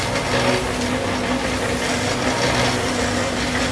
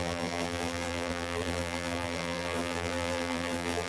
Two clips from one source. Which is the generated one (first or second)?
second